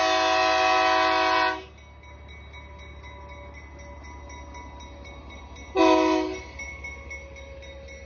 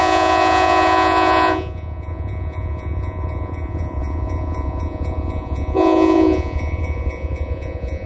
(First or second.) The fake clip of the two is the second